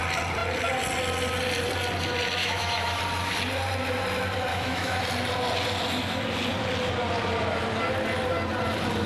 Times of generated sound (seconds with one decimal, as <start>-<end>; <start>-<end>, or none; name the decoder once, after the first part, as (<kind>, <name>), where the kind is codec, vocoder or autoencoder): 2.4-3.0 (autoencoder, DAC-VAE); 4.5-5.0